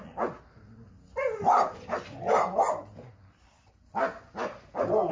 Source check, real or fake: real